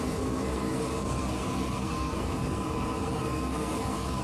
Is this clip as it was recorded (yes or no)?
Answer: no